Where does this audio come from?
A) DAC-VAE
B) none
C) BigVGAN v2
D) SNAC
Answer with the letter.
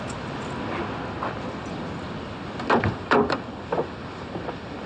B